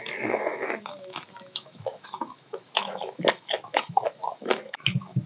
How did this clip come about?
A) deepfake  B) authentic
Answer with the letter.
A